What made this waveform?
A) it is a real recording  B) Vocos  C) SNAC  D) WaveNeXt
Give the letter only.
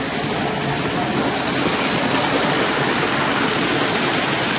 A